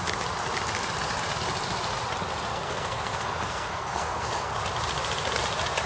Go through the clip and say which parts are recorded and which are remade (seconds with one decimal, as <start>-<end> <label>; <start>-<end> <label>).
0.0-2.5 recorded; 2.5-4.6 remade; 4.6-5.9 recorded